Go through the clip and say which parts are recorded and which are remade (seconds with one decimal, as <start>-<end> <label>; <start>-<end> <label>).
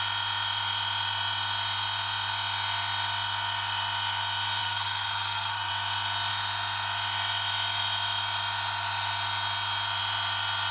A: 0.0-4.6 recorded; 4.6-5.7 remade; 5.7-10.7 recorded